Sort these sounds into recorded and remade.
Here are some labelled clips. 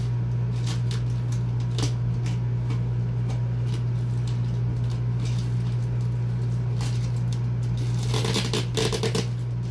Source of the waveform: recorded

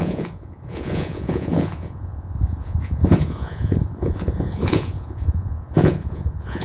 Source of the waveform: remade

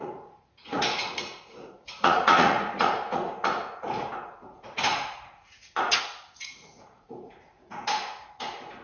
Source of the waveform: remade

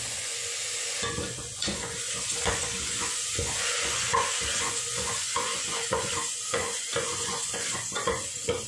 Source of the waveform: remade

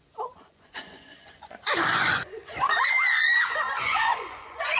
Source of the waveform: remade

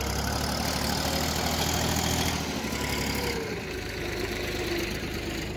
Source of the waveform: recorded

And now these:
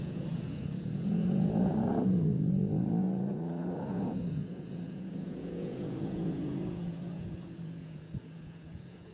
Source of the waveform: remade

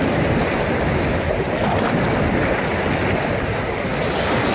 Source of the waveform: recorded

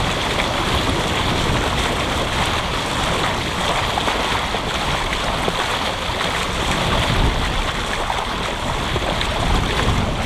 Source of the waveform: recorded